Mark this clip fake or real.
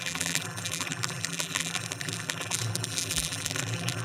fake